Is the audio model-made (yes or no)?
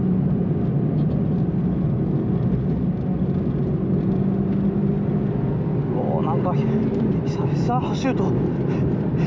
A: no